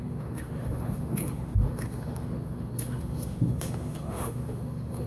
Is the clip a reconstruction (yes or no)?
yes